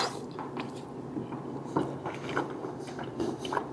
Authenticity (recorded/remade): recorded